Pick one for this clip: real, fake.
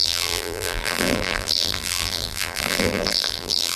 fake